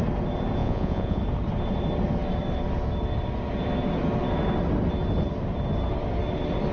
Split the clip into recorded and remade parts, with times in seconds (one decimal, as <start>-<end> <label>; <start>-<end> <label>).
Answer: 0.0-0.6 recorded; 0.6-1.2 remade; 1.2-6.7 recorded